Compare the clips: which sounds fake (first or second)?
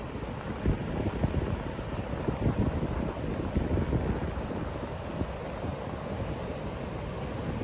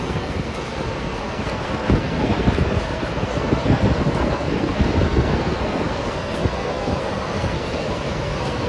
second